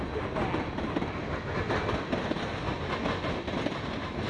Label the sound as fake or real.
real